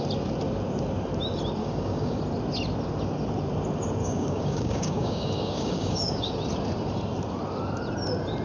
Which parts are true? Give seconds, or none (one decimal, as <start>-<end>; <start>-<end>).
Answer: 0.0-1.6; 2.2-4.0; 6.3-8.4